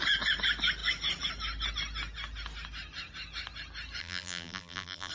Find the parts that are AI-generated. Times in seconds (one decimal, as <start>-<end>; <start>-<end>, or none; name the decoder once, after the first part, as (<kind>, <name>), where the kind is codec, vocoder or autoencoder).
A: 4.0-5.1 (vocoder, BigVGAN v2)